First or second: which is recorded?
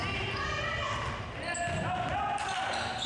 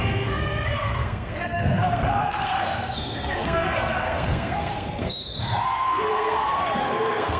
first